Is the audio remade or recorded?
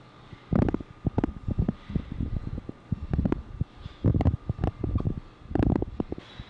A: recorded